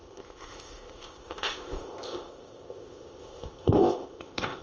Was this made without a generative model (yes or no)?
no